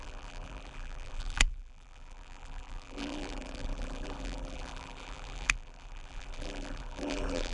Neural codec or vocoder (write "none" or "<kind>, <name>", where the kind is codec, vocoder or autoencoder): vocoder, BigVGAN v2